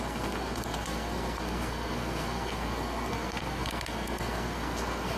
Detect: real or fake fake